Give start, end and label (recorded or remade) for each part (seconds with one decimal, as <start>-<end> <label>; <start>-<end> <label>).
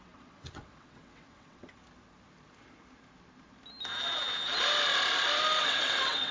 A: 0.0-1.8 remade; 1.8-5.6 recorded; 5.6-6.3 remade